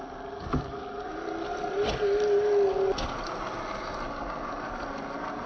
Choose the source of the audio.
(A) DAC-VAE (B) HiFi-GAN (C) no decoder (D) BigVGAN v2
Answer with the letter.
C